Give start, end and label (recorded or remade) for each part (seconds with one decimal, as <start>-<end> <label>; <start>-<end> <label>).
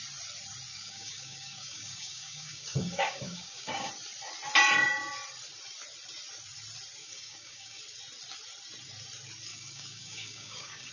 0.0-0.7 recorded; 0.7-3.9 remade; 3.9-7.0 recorded; 7.0-7.8 remade; 7.8-9.5 recorded; 9.5-10.9 remade